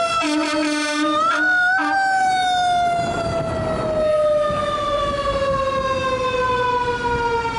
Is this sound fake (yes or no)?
no